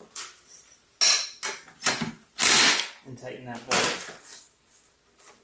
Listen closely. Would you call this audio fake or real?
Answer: real